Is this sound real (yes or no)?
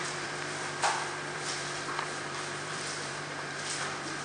no